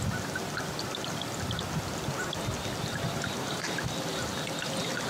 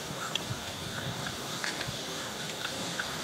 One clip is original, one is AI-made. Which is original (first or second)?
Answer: first